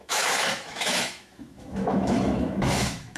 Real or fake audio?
fake